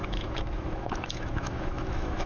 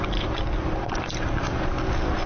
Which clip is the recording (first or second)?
second